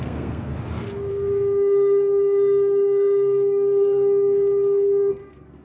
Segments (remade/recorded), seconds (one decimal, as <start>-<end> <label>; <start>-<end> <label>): 0.0-0.5 remade; 0.5-1.1 recorded; 1.1-5.6 remade